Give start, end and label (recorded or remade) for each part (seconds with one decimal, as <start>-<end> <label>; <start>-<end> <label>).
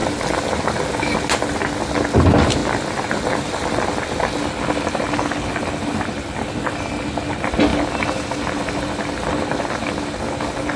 0.0-10.8 recorded